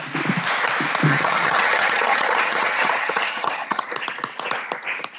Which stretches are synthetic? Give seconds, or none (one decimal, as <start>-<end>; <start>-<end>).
1.1-3.9

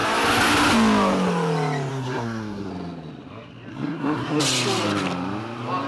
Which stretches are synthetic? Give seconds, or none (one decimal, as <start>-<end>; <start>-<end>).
1.9-2.7; 3.7-4.4